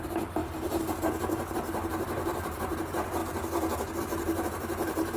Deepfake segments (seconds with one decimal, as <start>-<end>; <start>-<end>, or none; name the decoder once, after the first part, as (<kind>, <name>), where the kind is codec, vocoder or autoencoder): 0.0-3.2 (vocoder, BigVGAN v2); 4.0-5.2